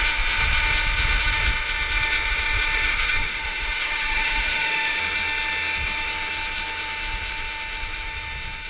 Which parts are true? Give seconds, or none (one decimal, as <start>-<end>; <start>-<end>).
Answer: 0.0-2.9; 5.0-8.7